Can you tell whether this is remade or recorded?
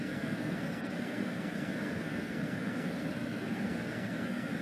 remade